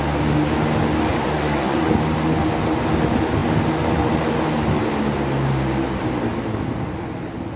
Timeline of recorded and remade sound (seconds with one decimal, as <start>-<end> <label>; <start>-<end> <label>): 0.0-1.1 recorded; 1.1-1.9 remade; 1.9-7.6 recorded